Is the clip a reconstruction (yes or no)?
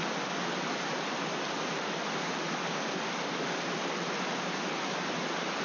no